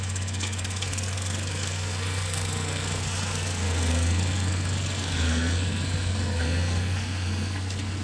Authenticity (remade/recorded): remade